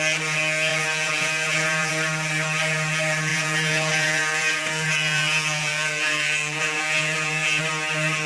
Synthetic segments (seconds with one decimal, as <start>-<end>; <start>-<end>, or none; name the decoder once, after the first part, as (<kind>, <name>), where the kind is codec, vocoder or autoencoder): 0.7-1.9 (vocoder, Vocos); 3.3-7.6